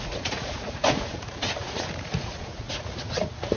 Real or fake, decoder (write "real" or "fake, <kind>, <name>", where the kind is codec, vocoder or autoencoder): fake, vocoder, Vocos